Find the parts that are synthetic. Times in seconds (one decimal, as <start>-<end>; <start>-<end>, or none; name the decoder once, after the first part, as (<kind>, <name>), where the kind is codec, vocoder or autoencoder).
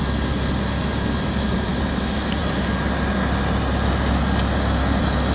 none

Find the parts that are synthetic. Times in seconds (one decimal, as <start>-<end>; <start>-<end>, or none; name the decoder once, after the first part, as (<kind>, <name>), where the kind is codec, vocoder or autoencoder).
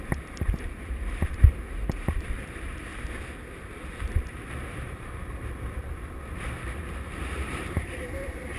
0.0-2.9 (vocoder, BigVGAN v2); 4.0-8.6